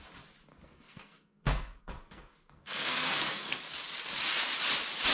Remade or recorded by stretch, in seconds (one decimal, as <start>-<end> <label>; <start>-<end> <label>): 0.0-0.5 recorded; 0.5-3.6 remade; 3.6-5.1 recorded